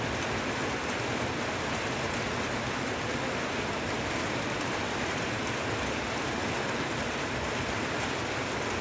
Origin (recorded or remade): recorded